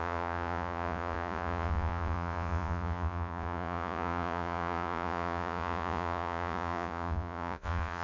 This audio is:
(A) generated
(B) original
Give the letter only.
A